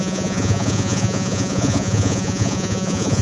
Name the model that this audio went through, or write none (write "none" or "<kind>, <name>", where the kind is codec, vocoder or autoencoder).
vocoder, Vocos